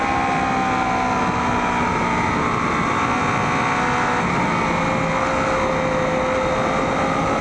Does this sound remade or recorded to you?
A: recorded